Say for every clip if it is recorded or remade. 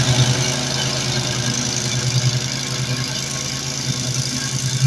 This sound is recorded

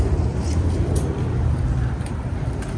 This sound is remade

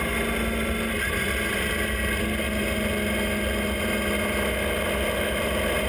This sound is recorded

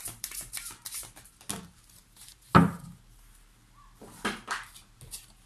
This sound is recorded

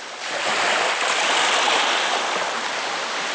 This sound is recorded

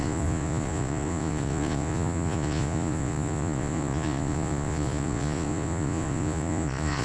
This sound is remade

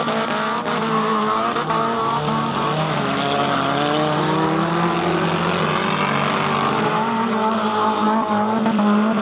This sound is recorded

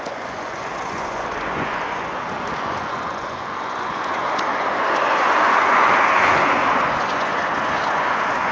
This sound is remade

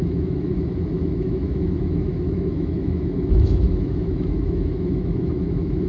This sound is remade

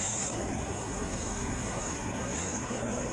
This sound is remade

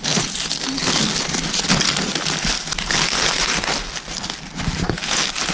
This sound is recorded